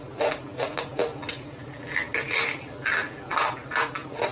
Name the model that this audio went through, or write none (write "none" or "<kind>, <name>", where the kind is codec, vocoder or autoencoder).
none